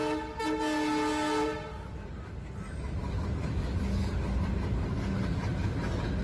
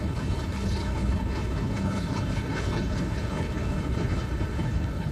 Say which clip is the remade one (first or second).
second